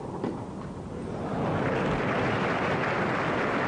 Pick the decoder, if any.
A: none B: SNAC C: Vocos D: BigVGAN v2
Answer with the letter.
A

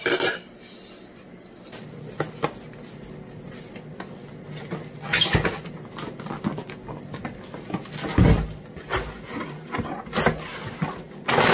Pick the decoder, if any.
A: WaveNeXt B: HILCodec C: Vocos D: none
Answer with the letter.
D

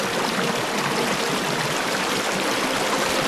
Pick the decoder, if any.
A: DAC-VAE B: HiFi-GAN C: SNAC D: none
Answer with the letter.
D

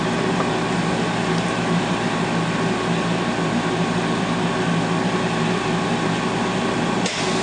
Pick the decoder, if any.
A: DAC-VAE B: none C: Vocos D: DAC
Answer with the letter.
B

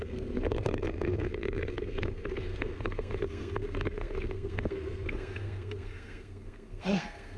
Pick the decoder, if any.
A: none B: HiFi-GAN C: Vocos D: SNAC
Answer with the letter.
D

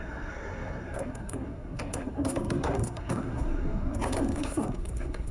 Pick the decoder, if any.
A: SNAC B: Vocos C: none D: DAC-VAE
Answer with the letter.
A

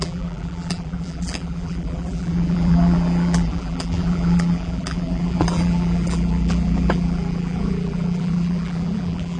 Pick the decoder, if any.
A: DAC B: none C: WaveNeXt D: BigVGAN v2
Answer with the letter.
D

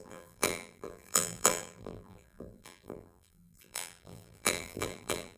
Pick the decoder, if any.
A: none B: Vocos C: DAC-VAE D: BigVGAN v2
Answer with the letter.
D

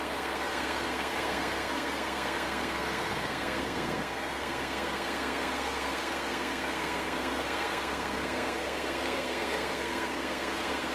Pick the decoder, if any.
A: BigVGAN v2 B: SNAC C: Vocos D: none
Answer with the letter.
B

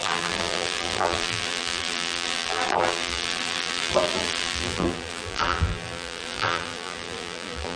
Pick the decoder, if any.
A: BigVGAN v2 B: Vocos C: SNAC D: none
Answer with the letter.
A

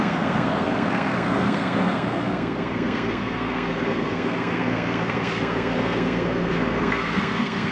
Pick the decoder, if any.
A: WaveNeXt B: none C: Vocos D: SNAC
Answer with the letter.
D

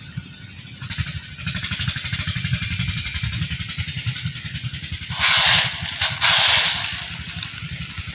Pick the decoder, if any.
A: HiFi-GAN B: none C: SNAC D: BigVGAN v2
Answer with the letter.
B